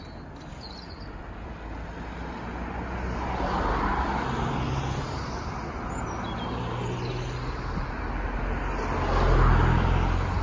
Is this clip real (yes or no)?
yes